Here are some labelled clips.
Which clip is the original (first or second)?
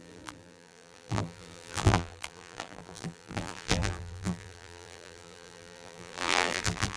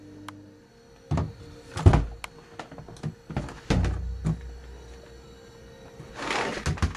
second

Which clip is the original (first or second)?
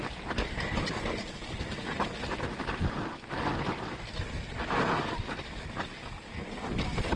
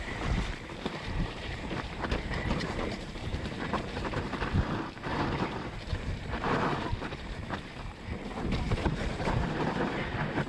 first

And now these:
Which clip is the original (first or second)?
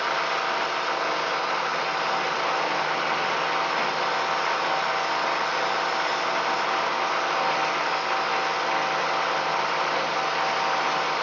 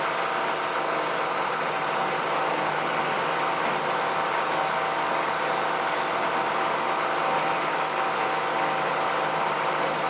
first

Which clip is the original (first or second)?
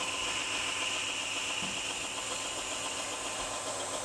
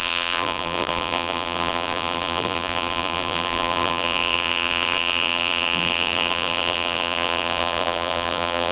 first